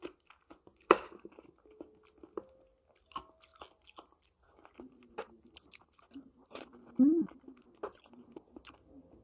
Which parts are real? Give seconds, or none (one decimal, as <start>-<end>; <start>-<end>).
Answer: 0.0-9.2